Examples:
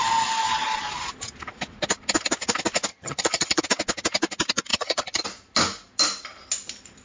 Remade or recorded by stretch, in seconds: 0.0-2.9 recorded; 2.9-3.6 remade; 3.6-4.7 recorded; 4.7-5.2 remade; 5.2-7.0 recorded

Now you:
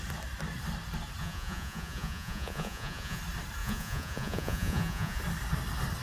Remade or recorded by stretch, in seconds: 0.0-1.2 recorded; 1.2-3.2 remade; 3.2-3.6 recorded; 3.6-5.2 remade; 5.2-6.0 recorded

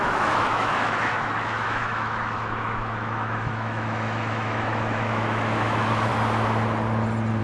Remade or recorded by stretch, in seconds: 0.0-6.1 remade; 6.1-7.4 recorded

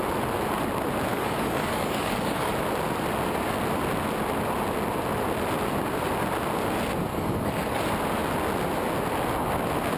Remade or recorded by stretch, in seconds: 0.0-1.1 recorded; 1.1-2.5 remade; 2.5-7.1 recorded; 7.1-7.8 remade; 7.8-10.0 recorded

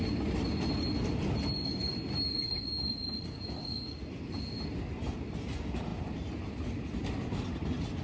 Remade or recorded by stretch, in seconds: 0.0-1.7 recorded; 1.7-2.5 remade; 2.5-8.0 recorded